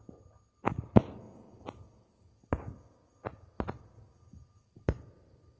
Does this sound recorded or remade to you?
recorded